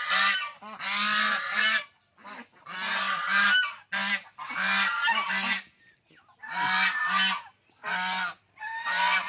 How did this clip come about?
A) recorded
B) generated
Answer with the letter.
A